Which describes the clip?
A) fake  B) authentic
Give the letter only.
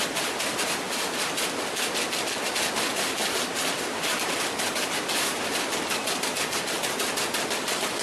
B